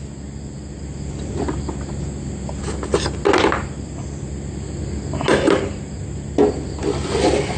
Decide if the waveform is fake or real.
real